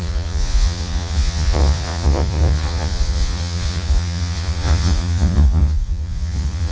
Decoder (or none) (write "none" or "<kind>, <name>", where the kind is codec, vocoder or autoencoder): vocoder, Vocos